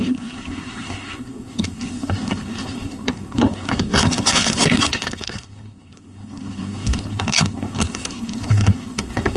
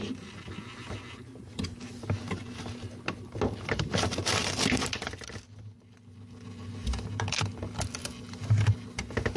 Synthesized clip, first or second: first